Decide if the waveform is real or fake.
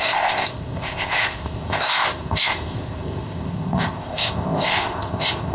fake